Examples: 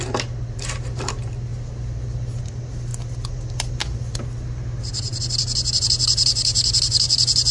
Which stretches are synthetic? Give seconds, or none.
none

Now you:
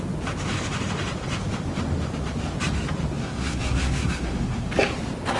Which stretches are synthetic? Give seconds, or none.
3.2-4.7 (codec, SNAC)

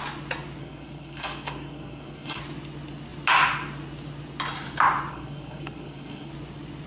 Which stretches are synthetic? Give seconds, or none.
0.6-2.4 (codec, SNAC); 5.1-6.3

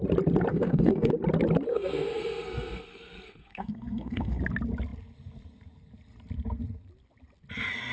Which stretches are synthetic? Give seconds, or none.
0.5-1.1 (codec, SNAC); 1.7-4.4